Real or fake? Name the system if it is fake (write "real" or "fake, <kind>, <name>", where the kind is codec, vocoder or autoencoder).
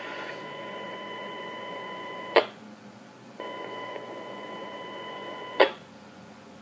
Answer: fake, vocoder, Vocos